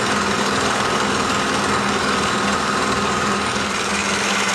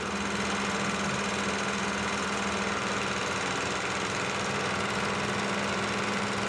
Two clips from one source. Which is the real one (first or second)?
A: second